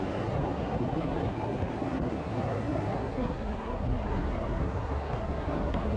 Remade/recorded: remade